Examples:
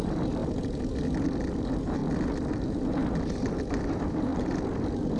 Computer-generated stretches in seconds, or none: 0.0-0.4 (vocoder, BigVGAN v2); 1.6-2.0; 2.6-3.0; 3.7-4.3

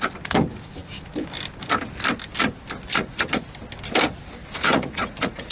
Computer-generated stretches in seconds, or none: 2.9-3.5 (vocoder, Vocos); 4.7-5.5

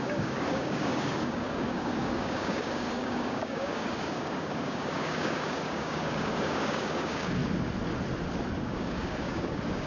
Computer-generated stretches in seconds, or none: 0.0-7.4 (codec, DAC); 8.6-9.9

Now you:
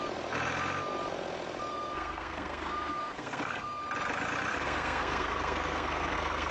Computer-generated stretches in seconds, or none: 1.7-3.8 (codec, SNAC); 4.5-6.5